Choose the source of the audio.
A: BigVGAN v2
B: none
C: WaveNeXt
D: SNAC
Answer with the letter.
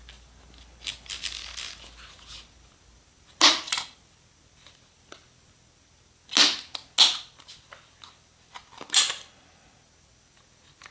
B